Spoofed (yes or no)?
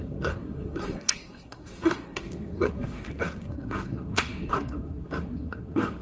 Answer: yes